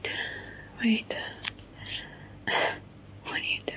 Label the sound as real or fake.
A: real